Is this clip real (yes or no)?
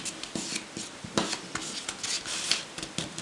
yes